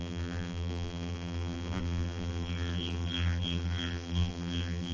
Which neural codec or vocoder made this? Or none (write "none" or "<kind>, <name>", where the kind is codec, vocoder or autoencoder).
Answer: vocoder, BigVGAN v2